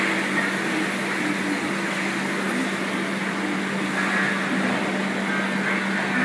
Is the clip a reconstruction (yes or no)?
no